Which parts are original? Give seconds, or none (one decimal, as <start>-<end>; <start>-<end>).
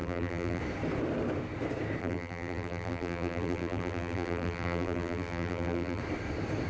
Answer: 0.6-2.0; 6.0-6.7